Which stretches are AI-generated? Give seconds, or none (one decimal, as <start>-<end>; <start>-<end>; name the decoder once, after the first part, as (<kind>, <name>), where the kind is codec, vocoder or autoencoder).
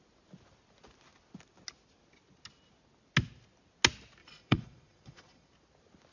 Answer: 4.2-5.5 (vocoder, Vocos)